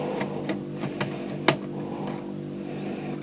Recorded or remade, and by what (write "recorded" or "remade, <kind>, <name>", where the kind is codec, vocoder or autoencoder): recorded